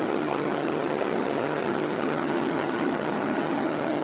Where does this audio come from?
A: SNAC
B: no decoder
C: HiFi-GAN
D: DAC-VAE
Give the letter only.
C